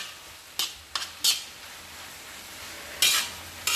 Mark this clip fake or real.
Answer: real